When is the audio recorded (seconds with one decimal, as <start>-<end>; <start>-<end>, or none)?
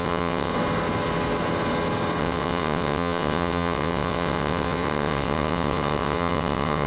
0.5-2.2